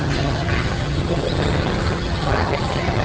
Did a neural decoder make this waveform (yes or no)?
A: yes